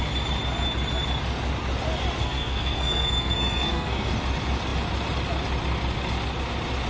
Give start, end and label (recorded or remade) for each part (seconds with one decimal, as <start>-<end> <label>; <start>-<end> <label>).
0.0-2.2 recorded; 2.2-4.1 remade; 4.1-6.9 recorded